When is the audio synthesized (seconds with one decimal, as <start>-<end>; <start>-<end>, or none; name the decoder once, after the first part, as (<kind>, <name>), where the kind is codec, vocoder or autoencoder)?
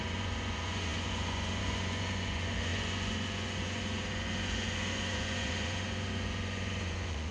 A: 0.0-7.3 (vocoder, Vocos)